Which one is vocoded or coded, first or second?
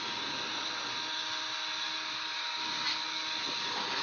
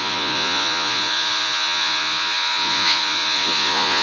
second